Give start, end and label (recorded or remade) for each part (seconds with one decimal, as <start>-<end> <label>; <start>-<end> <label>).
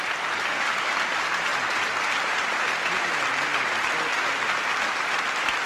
0.0-3.5 remade; 3.5-5.7 recorded